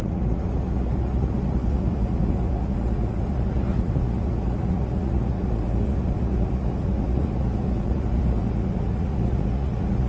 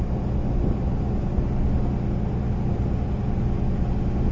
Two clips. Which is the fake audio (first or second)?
first